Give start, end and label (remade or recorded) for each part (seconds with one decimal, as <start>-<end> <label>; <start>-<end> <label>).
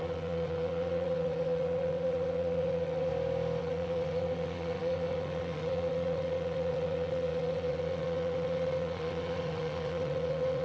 0.0-3.1 remade; 3.1-3.6 recorded; 3.6-10.6 remade